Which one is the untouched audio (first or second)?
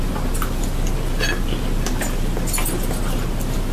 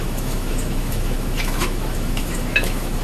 first